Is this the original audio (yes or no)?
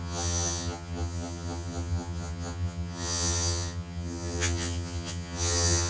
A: no